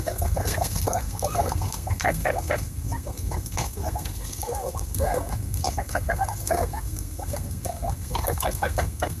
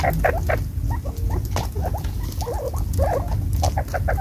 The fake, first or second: first